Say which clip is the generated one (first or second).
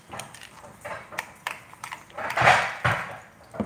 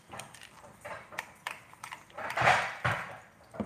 second